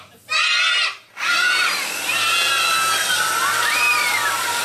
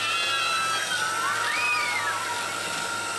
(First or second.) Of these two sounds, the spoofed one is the first